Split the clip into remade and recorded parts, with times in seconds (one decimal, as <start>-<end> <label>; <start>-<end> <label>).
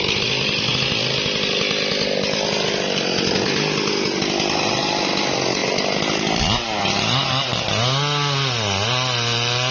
0.0-9.7 recorded